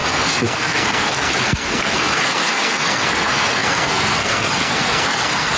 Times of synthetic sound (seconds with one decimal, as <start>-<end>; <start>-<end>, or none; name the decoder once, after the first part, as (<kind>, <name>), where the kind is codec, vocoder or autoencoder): 0.0-5.6 (codec, SNAC)